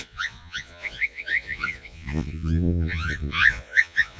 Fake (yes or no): yes